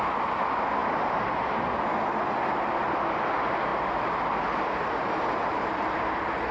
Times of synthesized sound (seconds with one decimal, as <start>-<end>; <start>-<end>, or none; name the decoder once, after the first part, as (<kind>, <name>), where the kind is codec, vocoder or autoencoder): 3.7-6.5 (vocoder, BigVGAN v2)